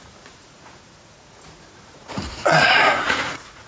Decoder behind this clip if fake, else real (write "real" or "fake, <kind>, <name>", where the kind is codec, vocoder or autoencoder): fake, vocoder, Vocos